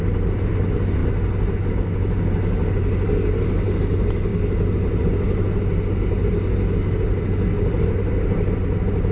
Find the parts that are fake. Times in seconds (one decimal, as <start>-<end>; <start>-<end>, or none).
none